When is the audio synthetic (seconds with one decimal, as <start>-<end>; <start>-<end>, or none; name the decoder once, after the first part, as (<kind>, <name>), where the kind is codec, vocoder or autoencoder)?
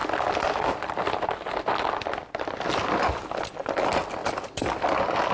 0.0-1.2 (vocoder, BigVGAN v2); 4.2-4.8